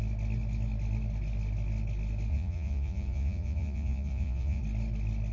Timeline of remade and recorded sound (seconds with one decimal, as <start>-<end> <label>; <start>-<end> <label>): 0.0-2.3 recorded; 2.3-4.6 remade; 4.6-5.3 recorded